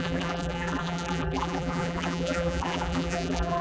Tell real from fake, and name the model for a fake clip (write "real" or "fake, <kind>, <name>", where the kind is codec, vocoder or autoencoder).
fake, vocoder, BigVGAN v2